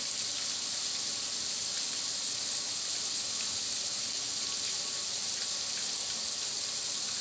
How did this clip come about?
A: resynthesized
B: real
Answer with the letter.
B